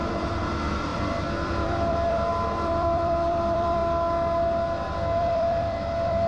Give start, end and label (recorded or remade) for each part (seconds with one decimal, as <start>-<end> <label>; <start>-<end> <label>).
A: 0.0-3.8 remade; 3.8-5.2 recorded; 5.2-6.3 remade